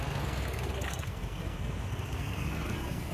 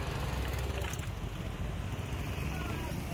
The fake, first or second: first